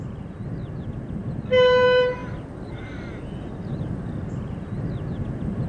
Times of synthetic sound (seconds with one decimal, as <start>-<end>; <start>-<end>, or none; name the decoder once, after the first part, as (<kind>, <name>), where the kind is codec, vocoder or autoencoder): none